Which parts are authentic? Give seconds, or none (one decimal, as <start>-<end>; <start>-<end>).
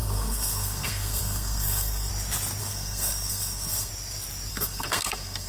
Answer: 2.1-2.6; 3.9-4.5